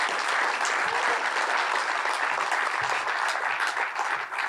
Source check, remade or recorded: recorded